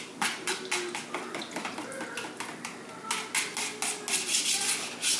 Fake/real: real